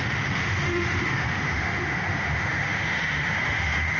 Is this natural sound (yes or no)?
no